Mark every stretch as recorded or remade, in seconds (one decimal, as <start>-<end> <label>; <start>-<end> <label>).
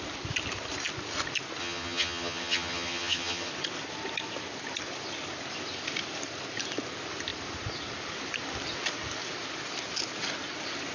0.0-1.6 recorded; 1.6-3.5 remade; 3.5-10.9 recorded